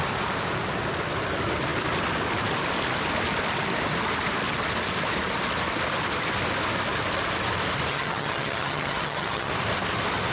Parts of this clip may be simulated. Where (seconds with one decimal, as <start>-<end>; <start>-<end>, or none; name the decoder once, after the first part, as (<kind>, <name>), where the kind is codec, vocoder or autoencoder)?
7.9-9.5 (vocoder, HiFi-GAN)